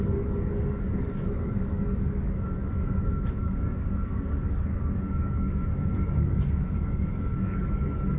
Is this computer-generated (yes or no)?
yes